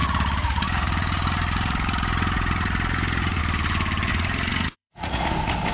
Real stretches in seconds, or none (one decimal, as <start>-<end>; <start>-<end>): 3.4-4.1; 5.2-5.7